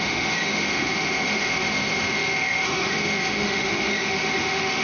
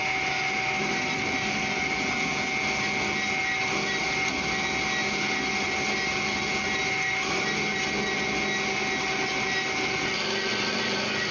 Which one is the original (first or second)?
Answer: second